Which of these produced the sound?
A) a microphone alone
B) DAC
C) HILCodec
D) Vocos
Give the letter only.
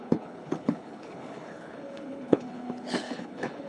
C